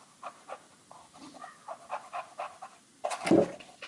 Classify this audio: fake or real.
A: real